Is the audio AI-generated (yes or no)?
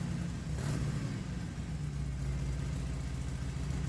no